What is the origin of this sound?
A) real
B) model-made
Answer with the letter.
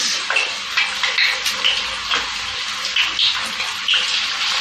A